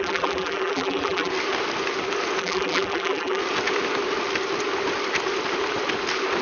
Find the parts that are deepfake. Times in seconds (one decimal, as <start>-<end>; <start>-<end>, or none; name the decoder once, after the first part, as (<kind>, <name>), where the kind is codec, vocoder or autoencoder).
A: 0.0-1.3 (vocoder, BigVGAN v2); 2.4-3.4